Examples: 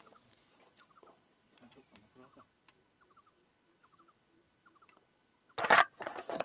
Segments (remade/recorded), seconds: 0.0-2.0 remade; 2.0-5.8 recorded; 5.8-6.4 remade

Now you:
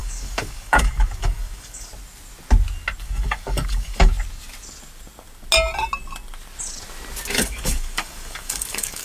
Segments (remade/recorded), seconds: 0.0-1.9 remade; 1.9-3.0 recorded; 3.0-4.1 remade; 4.1-7.3 recorded; 7.3-9.0 remade

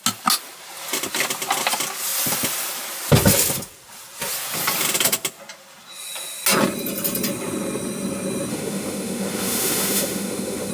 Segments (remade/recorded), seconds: 0.0-8.5 recorded; 8.5-10.7 remade

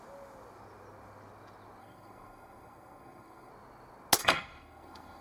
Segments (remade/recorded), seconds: 0.0-1.8 recorded; 1.8-3.5 remade; 3.5-4.2 recorded; 4.2-5.2 remade